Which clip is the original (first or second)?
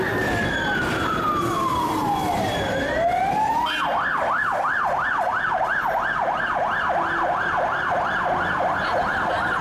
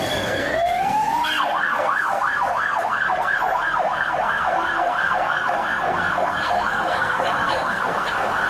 first